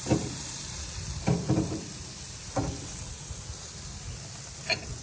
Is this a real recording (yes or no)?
yes